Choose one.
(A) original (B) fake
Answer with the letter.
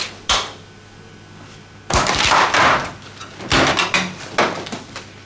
A